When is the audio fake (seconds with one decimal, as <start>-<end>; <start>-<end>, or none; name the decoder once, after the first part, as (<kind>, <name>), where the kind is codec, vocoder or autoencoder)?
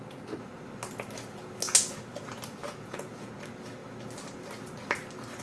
2.6-3.3 (vocoder, Vocos)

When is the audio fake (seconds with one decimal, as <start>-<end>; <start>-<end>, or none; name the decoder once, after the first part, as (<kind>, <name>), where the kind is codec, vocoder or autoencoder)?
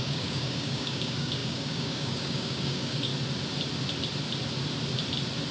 0.0-3.1 (codec, DAC)